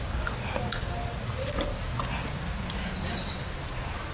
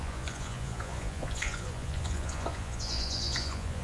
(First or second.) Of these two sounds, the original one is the first